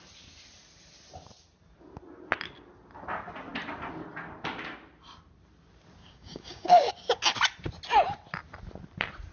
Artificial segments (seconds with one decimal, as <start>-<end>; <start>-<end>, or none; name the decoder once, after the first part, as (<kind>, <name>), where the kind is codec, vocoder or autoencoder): 6.0-6.9 (codec, DAC)